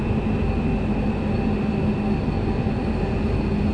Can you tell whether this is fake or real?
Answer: real